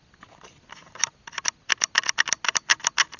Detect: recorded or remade recorded